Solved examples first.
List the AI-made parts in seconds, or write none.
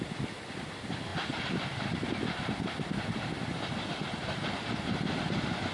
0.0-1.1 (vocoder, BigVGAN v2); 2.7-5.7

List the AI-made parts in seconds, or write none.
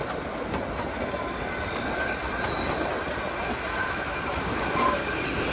3.8-4.7 (autoencoder, DAC-VAE)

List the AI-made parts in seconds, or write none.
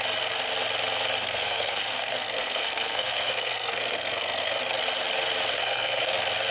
1.2-4.6 (codec, SNAC); 5.5-6.1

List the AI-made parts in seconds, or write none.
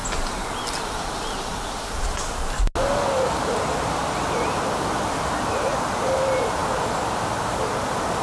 none